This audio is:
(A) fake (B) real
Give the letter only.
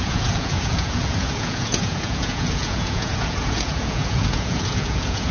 A